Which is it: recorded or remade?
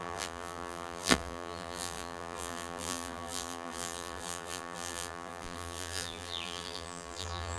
remade